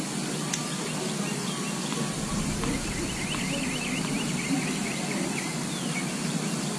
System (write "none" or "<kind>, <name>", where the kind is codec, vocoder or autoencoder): none